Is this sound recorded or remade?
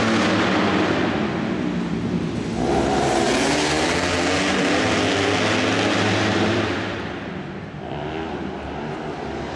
recorded